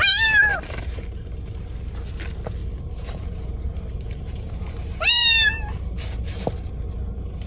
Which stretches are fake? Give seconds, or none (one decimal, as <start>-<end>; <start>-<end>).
0.5-1.7; 2.6-6.7